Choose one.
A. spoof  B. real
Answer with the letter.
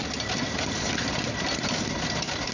A